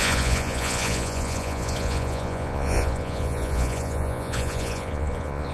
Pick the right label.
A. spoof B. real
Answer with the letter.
A